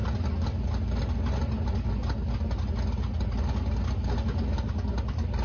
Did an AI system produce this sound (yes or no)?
no